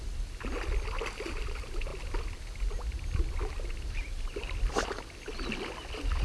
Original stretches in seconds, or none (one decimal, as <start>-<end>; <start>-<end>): 0.0-6.2